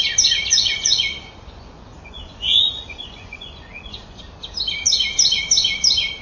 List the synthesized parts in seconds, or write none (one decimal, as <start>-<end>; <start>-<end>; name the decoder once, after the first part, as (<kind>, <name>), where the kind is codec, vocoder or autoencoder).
0.5-4.2 (vocoder, Vocos)